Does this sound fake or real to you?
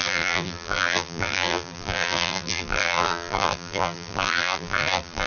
fake